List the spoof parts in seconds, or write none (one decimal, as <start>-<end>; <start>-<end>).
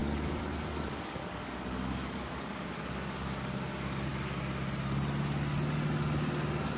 0.0-4.1